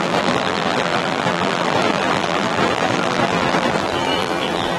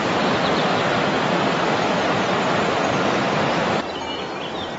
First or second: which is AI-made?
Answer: first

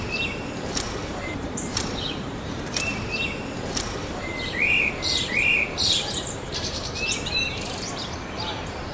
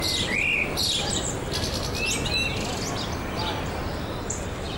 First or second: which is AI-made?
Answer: first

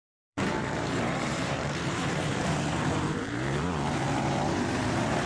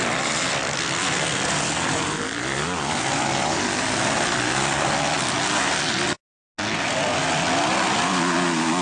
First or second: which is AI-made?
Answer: first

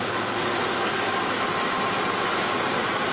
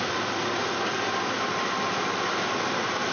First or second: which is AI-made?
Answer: second